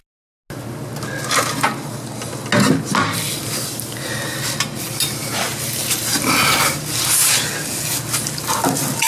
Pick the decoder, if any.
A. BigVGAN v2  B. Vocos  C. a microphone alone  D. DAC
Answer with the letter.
C